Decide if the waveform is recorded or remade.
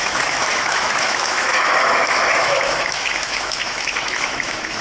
remade